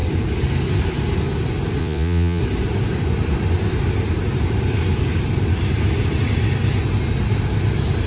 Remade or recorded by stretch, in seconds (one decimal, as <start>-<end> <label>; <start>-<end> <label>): 0.0-1.8 recorded; 1.8-2.4 remade; 2.4-8.1 recorded